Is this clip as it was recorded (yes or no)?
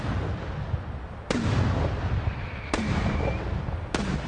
yes